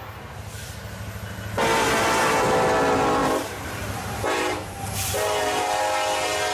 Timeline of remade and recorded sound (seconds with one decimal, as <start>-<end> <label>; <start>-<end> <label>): 0.0-3.2 recorded; 3.2-5.8 remade; 5.8-6.5 recorded